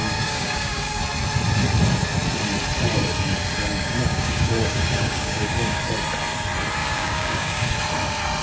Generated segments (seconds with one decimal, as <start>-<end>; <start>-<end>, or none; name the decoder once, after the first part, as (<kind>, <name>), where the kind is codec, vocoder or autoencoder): 0.0-1.0 (codec, DAC); 3.7-5.8; 6.8-7.7